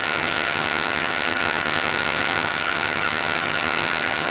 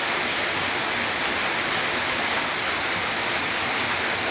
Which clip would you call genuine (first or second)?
second